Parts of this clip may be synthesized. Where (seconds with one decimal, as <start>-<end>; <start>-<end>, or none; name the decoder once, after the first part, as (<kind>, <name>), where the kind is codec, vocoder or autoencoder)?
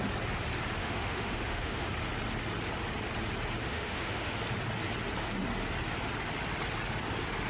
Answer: 0.8-1.9 (autoencoder, DAC-VAE); 3.6-4.4